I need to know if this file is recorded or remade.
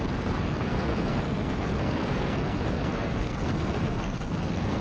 remade